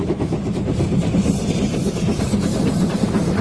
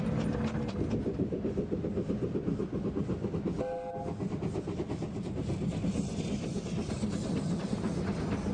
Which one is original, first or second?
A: second